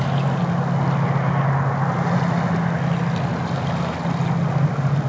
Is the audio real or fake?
real